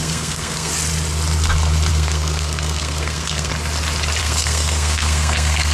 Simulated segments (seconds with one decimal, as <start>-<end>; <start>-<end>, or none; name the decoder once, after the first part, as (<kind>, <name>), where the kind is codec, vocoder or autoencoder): 0.0-0.7 (codec, SNAC); 1.9-3.5; 4.2-5.7